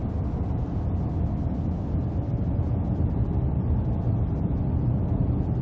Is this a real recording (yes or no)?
yes